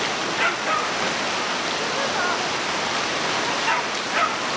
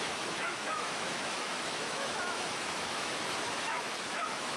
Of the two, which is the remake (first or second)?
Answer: second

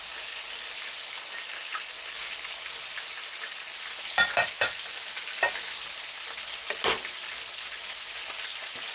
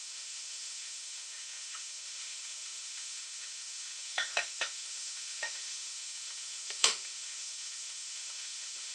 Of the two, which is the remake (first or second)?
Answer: second